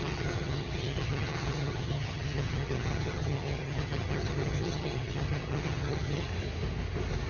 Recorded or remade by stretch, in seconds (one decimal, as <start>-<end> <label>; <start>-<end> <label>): 0.0-6.3 remade; 6.3-7.3 recorded